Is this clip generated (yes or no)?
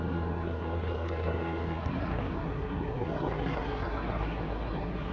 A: yes